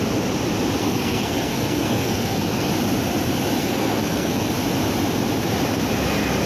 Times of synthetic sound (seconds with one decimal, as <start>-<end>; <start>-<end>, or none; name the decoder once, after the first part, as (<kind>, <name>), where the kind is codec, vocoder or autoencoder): 0.8-2.7 (codec, SNAC); 3.6-4.5